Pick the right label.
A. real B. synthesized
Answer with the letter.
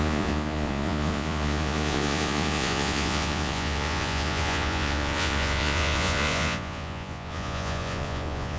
B